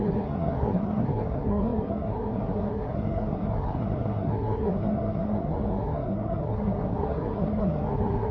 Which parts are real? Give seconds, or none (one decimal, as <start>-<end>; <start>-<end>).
none

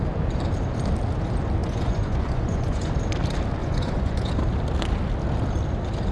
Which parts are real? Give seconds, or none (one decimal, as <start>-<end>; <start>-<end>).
0.0-1.6; 2.9-3.6; 4.3-6.1

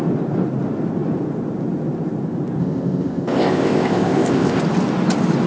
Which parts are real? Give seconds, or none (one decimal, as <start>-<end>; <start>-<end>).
0.0-2.6; 4.6-5.5

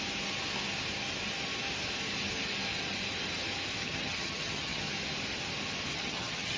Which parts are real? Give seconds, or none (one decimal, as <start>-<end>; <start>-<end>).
0.0-3.8; 4.8-5.9

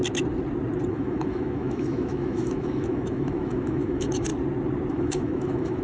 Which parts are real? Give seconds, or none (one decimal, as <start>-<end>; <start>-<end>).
0.0-0.9; 4.3-4.9